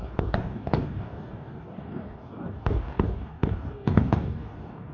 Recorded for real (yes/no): no